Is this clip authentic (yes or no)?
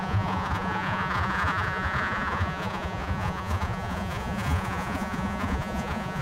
no